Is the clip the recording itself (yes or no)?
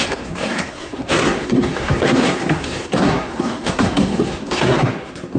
no